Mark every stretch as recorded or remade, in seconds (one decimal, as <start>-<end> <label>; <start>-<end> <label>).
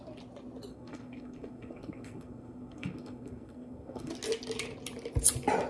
0.0-0.7 recorded; 0.7-4.1 remade; 4.1-5.7 recorded